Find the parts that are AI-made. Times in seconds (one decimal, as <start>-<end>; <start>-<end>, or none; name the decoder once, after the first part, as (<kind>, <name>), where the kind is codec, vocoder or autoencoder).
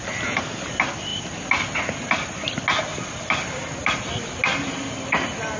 none